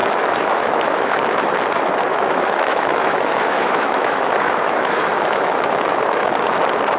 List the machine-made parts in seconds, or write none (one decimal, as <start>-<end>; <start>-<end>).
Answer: 0.0-1.5; 2.1-6.3